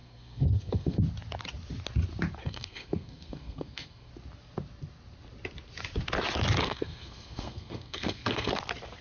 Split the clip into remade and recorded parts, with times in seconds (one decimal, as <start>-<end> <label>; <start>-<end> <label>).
0.0-1.0 remade; 1.0-2.4 recorded; 2.4-4.1 remade; 4.1-6.6 recorded; 6.6-8.5 remade; 8.5-9.0 recorded